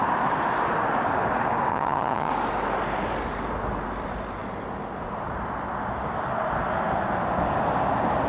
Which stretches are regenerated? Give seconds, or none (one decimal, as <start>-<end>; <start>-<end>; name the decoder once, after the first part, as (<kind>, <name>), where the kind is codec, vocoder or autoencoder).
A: 1.7-2.3 (vocoder, HiFi-GAN)